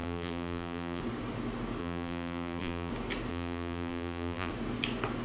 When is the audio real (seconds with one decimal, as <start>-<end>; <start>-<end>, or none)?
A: 1.0-1.8; 2.9-3.3; 4.5-5.2